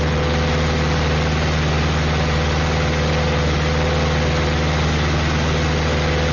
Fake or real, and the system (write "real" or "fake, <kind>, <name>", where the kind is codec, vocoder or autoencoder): real